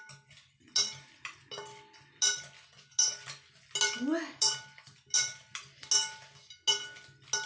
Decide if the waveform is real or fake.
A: real